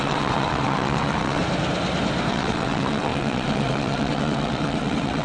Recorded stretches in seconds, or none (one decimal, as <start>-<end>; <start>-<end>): 1.4-2.3